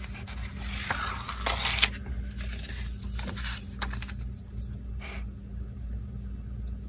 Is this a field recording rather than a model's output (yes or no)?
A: yes